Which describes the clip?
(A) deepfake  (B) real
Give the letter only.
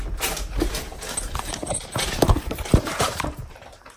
A